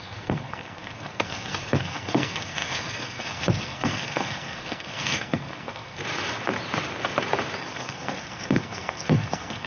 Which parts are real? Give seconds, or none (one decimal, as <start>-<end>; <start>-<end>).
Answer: 6.0-7.6